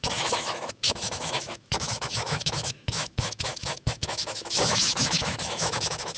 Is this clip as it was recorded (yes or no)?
no